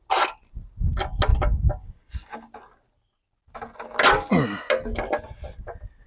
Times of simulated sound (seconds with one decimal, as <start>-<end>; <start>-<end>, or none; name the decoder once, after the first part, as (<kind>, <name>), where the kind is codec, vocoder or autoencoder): none